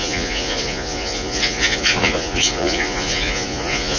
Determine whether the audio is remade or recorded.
remade